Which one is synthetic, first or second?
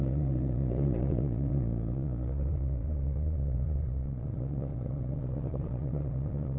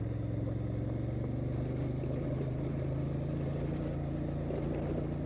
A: first